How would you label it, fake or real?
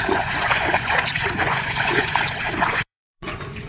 fake